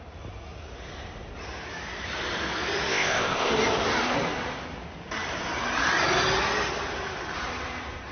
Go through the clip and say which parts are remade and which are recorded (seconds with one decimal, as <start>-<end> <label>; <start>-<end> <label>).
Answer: 0.0-2.9 recorded; 2.9-3.5 remade; 3.5-8.1 recorded